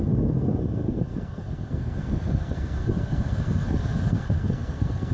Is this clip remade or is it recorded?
remade